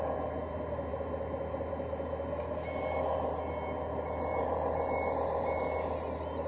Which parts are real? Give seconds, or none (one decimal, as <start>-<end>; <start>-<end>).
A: 0.0-6.5